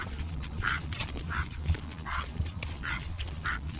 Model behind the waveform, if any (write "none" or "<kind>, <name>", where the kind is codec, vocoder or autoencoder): vocoder, Vocos